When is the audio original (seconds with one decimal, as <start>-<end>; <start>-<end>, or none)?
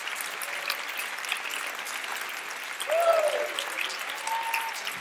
0.0-5.0